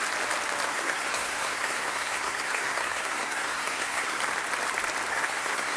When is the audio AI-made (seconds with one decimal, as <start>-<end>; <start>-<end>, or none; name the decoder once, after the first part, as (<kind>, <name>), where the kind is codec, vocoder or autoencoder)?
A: 0.7-4.2 (codec, SNAC); 5.1-5.8